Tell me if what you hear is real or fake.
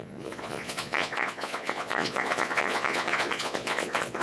fake